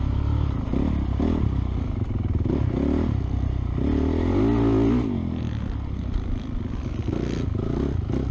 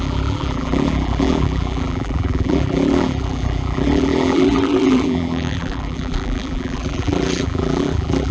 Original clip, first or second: first